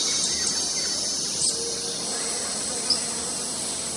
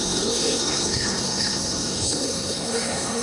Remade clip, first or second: second